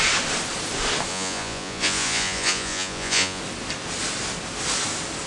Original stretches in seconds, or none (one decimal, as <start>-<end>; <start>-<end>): 0.0-1.1; 3.4-5.3

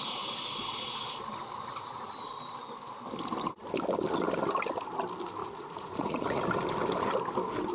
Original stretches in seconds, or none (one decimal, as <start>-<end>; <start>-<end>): 0.0-5.4; 6.4-7.7

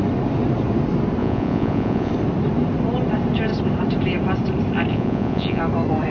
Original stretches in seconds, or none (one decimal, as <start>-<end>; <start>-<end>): 0.0-1.2; 2.1-4.9; 5.6-6.1